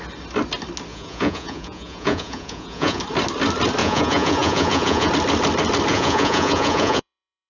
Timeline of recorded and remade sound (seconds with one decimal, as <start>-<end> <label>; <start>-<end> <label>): 0.0-0.9 recorded; 0.9-3.0 remade; 3.0-3.8 recorded; 3.8-5.1 remade; 5.1-5.9 recorded; 5.9-7.5 remade